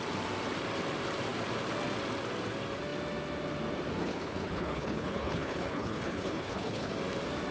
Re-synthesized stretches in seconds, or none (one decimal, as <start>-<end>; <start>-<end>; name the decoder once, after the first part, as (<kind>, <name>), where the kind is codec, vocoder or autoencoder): 4.0-6.9 (codec, HILCodec)